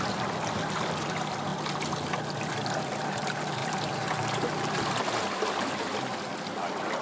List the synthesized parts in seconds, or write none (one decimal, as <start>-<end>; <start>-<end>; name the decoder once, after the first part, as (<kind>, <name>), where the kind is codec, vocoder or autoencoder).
3.6-4.8 (vocoder, BigVGAN v2)